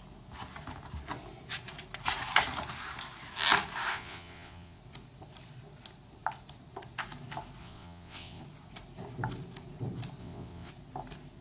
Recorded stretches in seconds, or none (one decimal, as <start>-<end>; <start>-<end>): 0.0-3.9; 4.8-7.6; 8.4-10.2; 10.7-11.4